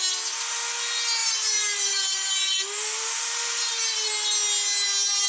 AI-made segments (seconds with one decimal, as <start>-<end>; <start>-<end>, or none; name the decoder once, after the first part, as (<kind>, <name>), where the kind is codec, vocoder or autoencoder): 1.2-3.7 (vocoder, BigVGAN v2)